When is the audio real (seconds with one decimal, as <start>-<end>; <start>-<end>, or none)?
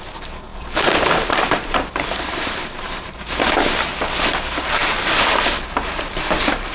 0.0-0.5; 3.5-6.7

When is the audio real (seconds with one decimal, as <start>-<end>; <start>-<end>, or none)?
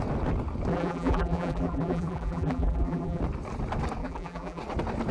0.0-0.7; 3.2-4.0; 4.6-5.1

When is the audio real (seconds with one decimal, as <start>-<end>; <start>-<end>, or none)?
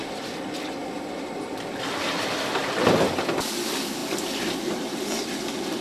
0.0-5.8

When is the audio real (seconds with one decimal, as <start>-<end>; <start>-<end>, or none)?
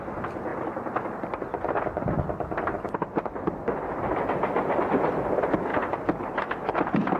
0.0-7.2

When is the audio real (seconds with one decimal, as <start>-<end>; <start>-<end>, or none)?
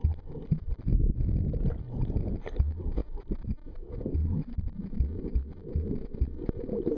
0.0-7.0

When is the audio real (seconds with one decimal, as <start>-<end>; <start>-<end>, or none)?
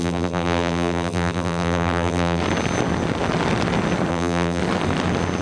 2.4-4.1; 4.6-5.4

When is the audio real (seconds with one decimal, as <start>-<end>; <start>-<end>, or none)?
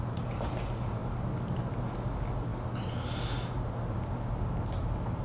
0.0-5.2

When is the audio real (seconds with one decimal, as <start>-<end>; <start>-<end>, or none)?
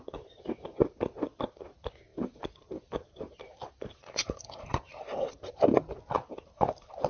0.0-2.1; 5.5-7.1